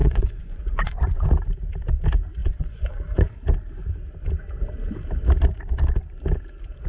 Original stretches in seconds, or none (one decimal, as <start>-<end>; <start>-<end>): 1.2-2.4; 3.3-6.9